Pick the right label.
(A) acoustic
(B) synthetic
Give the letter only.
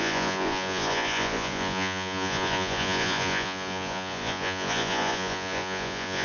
B